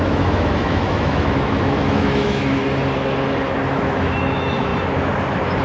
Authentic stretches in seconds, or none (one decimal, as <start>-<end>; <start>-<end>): 2.6-3.8; 4.7-5.6